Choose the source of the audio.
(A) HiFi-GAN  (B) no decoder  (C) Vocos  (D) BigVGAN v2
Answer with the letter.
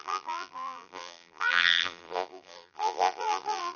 D